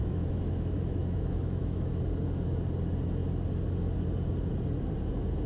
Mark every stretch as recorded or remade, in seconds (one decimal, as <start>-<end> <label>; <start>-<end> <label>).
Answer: 0.0-1.9 remade; 1.9-5.5 recorded